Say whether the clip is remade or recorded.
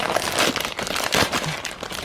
recorded